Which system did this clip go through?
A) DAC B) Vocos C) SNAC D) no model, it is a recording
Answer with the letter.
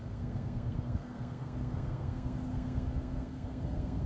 C